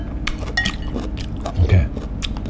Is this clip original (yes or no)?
yes